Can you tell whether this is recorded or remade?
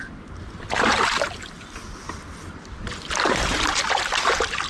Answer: recorded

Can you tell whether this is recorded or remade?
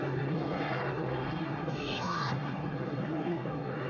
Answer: remade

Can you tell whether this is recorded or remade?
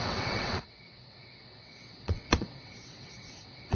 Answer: remade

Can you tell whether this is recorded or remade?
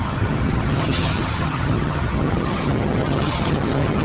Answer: remade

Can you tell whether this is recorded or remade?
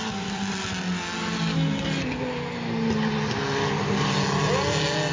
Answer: recorded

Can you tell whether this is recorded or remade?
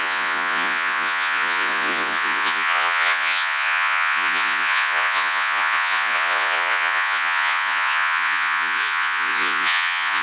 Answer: remade